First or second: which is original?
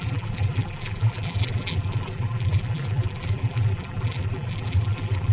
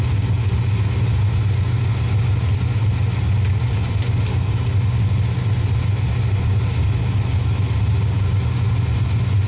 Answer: second